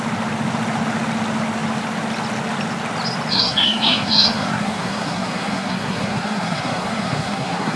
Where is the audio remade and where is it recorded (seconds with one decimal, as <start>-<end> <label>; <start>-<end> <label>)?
0.0-3.3 recorded; 3.3-7.8 remade